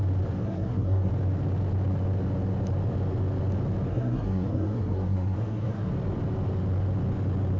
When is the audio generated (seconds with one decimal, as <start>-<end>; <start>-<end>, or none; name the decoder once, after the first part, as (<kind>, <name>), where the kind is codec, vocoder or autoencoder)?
0.4-1.1 (codec, SNAC); 3.9-5.9